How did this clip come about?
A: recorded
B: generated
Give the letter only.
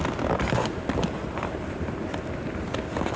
A